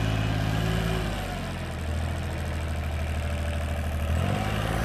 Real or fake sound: real